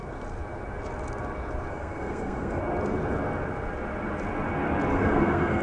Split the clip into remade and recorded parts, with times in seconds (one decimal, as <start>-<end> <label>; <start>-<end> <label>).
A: 0.0-1.7 recorded; 1.7-2.6 remade; 2.6-4.9 recorded; 4.9-5.6 remade